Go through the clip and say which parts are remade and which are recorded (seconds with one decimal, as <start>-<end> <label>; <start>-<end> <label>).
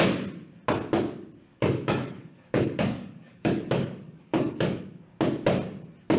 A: 0.0-1.5 recorded; 1.5-4.8 remade; 4.8-6.2 recorded